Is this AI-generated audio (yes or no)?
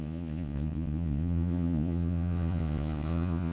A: yes